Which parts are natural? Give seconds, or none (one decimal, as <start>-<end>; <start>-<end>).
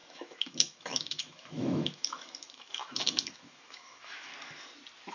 4.3-5.1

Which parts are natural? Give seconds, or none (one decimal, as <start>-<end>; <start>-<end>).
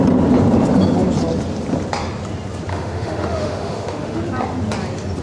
0.0-2.7; 4.2-5.2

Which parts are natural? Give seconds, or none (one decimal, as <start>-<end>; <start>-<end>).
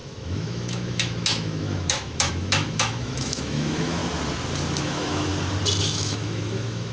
4.0-4.8; 5.3-5.8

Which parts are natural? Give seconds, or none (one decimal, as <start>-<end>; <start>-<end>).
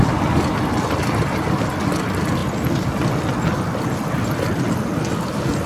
0.0-5.7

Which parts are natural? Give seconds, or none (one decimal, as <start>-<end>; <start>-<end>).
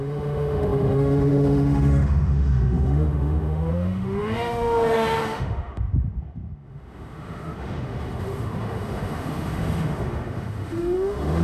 none